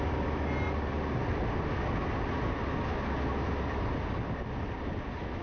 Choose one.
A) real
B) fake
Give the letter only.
A